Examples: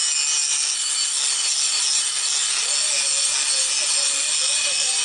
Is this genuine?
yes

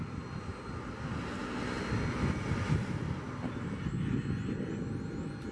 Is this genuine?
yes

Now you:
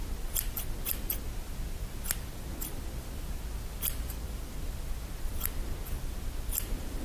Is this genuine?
yes